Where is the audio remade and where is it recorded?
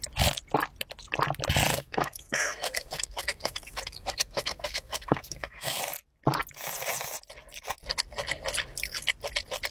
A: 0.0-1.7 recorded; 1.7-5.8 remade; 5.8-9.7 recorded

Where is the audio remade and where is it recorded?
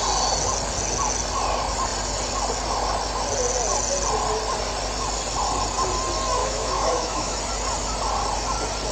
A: 0.0-6.4 recorded; 6.4-7.4 remade; 7.4-8.9 recorded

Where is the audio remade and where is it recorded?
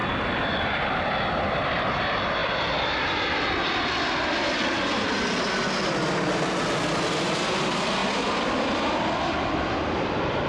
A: 0.0-10.5 recorded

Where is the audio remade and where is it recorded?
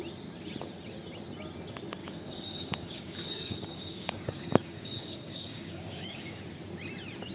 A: 0.0-2.0 recorded; 2.0-6.4 remade; 6.4-7.3 recorded